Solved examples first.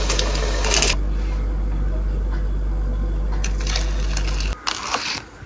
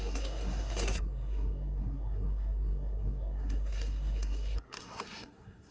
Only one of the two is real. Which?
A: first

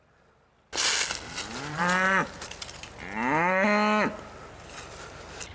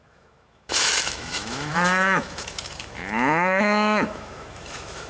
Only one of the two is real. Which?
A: first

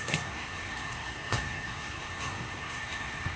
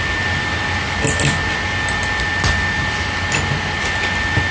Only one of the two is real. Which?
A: second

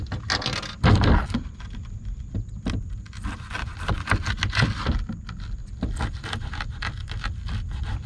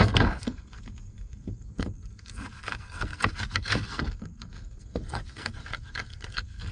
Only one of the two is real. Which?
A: first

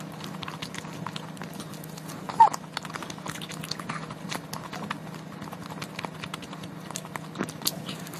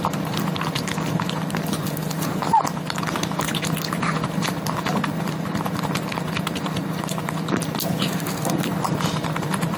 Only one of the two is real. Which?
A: first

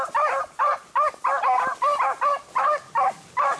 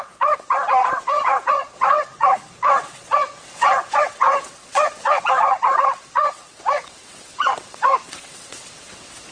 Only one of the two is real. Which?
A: first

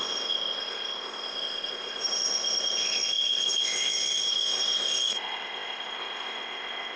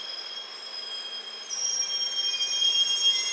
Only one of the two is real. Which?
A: second